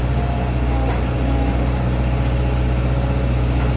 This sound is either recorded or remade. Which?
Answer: recorded